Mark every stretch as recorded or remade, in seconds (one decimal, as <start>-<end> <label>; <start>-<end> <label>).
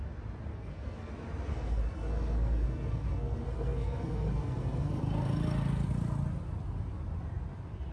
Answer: 0.0-0.5 recorded; 0.5-1.1 remade; 1.1-1.5 recorded; 1.5-5.0 remade; 5.0-7.9 recorded